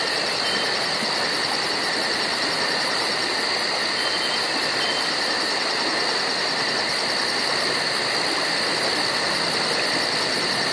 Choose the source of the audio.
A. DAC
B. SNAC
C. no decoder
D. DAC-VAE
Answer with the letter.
C